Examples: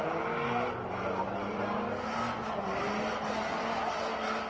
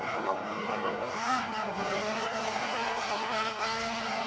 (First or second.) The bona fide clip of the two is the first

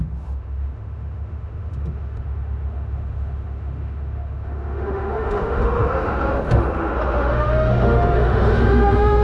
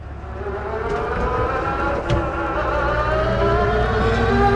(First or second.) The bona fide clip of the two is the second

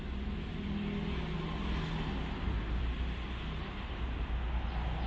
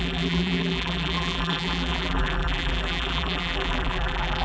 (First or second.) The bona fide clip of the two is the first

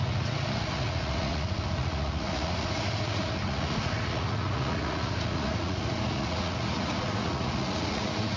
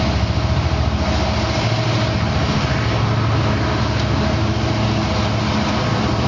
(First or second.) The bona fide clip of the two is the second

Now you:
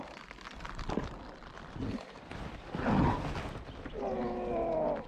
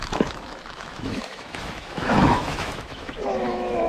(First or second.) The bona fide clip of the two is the first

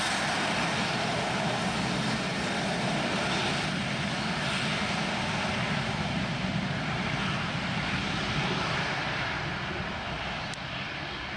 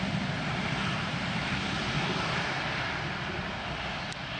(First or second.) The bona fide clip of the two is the first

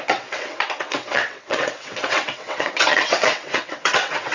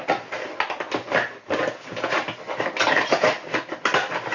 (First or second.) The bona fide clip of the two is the second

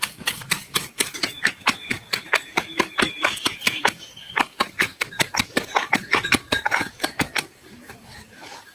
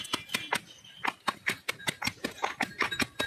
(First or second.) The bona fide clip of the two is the second